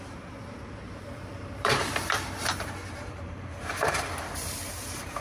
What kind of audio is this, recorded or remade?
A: remade